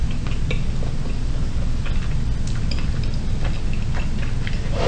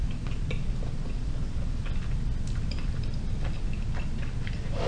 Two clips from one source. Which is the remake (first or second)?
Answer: second